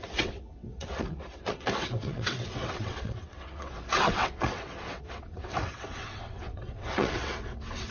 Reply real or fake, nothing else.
fake